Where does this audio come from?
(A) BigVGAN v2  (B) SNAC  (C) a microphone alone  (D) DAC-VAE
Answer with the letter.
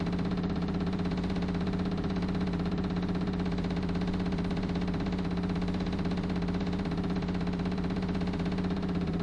A